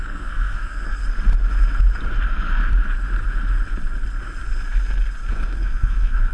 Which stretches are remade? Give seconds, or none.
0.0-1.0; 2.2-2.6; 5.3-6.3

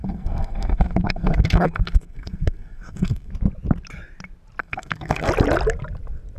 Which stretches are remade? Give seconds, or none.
0.0-3.3; 4.6-5.3

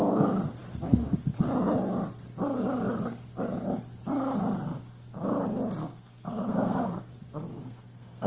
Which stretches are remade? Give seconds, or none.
5.8-7.1; 7.5-8.3

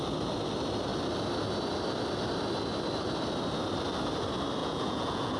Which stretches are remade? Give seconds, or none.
4.6-5.4

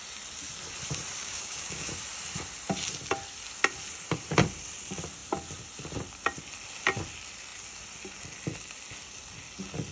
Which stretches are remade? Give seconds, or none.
1.2-1.9

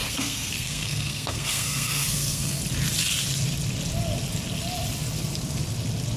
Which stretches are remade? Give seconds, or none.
0.0-2.6

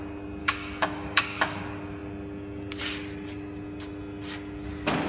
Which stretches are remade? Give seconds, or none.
0.4-1.6

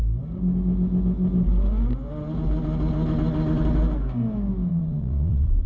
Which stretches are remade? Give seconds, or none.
4.7-5.7